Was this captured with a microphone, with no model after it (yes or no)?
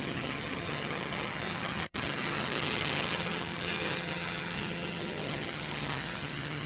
no